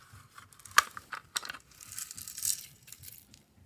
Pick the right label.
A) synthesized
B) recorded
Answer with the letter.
A